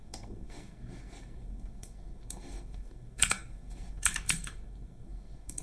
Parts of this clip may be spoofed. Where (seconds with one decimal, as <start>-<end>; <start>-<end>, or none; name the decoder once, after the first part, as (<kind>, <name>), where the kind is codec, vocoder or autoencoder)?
0.0-5.6 (codec, SNAC)